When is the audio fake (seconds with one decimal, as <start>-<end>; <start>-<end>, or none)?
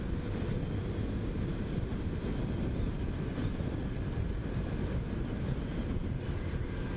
none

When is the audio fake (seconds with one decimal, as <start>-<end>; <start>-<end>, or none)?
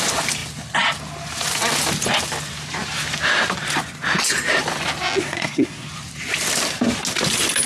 5.2-5.9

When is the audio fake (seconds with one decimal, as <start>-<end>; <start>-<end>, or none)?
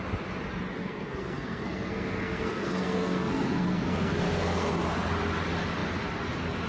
0.8-4.8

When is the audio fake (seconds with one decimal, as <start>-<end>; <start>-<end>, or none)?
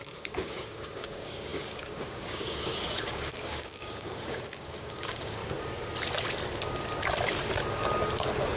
0.0-5.4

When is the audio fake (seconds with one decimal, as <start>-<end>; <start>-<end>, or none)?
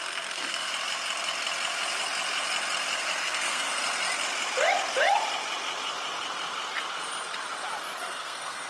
0.0-0.7; 3.2-3.8; 8.0-8.7